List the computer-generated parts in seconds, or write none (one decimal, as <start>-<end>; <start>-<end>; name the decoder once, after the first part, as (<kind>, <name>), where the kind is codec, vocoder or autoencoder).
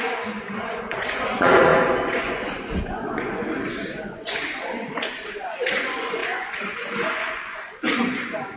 0.0-8.6 (vocoder, Vocos)